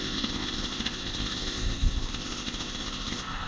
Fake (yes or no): yes